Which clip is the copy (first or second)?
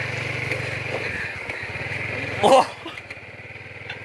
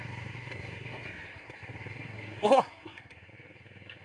second